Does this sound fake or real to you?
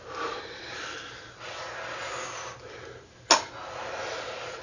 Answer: real